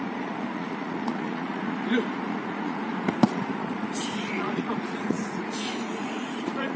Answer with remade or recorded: remade